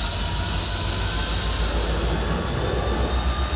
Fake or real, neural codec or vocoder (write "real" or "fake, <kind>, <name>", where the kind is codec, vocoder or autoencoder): real